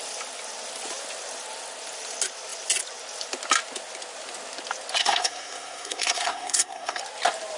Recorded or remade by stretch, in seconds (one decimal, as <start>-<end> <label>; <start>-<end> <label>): 0.0-5.0 recorded; 5.0-7.0 remade; 7.0-7.6 recorded